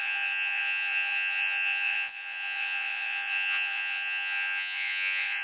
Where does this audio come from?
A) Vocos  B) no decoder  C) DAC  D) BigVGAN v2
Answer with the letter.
A